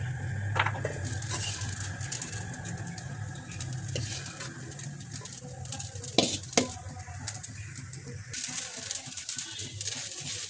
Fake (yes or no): no